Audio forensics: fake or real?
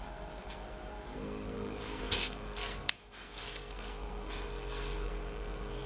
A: fake